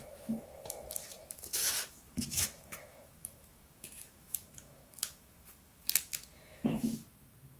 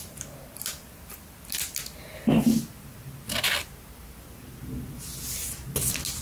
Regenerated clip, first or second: first